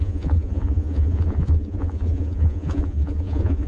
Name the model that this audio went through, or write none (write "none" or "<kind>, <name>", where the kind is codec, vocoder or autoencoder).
vocoder, Vocos